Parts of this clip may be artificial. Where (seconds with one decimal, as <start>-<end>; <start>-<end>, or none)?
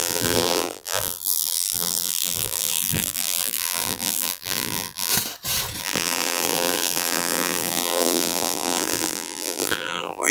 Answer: 0.0-5.1; 5.8-10.3